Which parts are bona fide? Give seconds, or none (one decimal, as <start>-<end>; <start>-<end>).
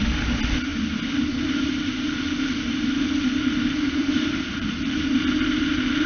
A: 0.0-0.7; 1.9-4.0; 5.2-6.1